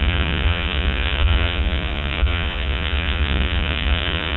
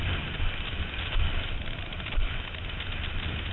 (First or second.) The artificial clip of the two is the first